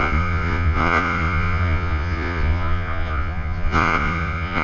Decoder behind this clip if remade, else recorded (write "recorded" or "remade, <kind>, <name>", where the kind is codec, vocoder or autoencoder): remade, vocoder, Vocos